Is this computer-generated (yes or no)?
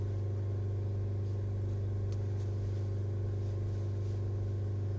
no